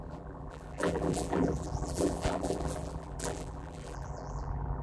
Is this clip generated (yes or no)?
yes